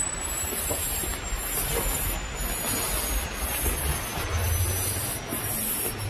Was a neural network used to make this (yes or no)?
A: no